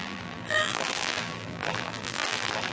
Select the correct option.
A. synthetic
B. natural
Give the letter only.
A